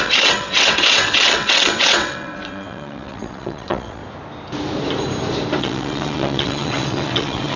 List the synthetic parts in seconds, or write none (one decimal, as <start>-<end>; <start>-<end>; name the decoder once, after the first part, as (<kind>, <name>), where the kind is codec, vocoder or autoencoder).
0.0-4.0 (vocoder, WaveNeXt); 5.6-7.6